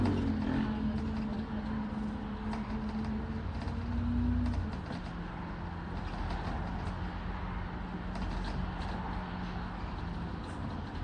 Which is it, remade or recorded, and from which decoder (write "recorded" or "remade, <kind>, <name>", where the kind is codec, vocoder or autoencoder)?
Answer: recorded